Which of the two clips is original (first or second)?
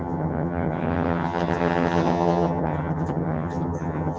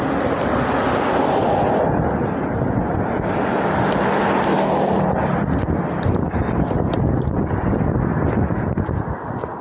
second